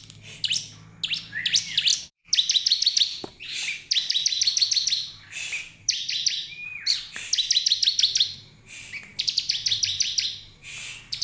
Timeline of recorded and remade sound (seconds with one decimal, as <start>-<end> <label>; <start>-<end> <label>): 0.0-1.9 recorded; 1.9-6.1 remade; 6.1-11.2 recorded